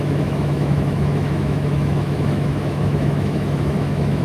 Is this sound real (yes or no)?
no